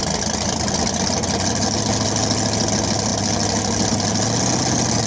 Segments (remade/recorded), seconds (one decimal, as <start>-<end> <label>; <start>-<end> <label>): 0.0-5.1 recorded